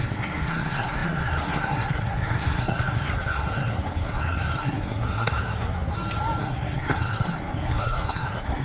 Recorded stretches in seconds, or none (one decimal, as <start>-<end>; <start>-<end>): 5.9-6.4